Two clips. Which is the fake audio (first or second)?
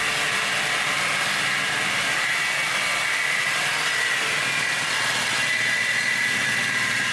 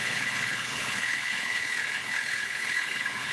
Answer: second